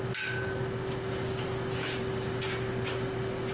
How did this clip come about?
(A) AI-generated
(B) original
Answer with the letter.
B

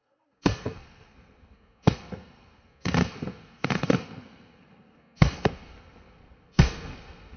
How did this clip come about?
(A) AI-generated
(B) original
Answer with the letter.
A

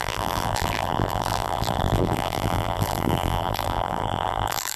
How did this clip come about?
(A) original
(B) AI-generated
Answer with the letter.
B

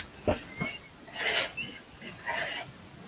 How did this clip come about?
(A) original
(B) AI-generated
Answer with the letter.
A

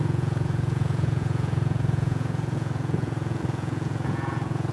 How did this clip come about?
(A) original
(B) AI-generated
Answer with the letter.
B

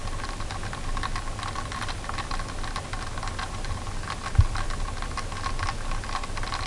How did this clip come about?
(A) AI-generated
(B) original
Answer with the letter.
B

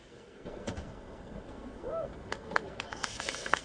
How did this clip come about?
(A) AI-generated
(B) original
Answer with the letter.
A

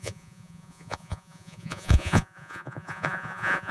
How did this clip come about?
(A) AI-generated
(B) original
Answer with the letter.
A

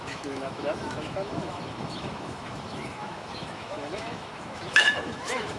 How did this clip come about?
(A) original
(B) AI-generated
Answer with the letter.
B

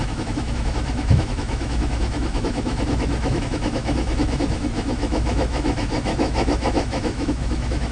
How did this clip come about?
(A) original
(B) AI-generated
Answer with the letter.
B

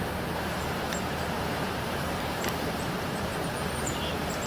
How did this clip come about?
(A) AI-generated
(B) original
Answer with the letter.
A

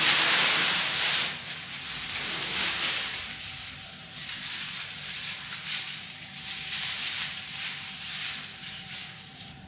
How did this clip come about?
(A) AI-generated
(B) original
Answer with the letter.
A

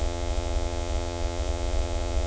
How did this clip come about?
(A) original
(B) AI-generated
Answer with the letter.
B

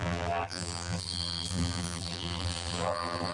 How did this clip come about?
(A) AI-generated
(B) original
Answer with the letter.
A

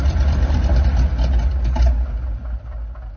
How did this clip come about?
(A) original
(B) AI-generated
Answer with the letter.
A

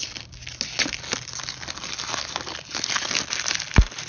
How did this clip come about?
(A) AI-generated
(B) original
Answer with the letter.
B